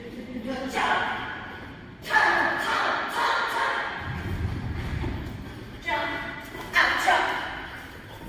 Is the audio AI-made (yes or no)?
no